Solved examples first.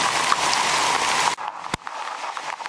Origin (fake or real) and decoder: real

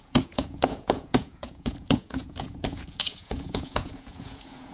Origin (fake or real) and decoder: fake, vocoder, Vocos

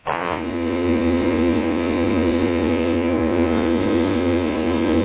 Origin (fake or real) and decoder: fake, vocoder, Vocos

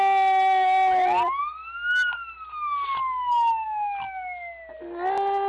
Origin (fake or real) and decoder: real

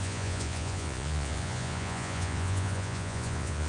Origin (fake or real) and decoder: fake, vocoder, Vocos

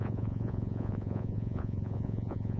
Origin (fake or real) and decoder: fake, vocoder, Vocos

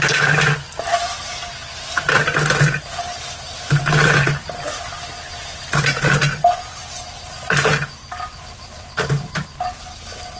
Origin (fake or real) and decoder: real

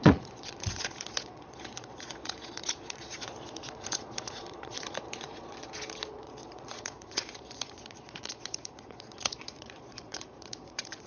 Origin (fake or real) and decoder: fake, vocoder, Vocos